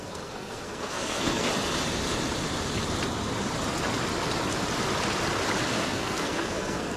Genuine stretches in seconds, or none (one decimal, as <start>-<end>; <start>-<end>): 1.5-5.7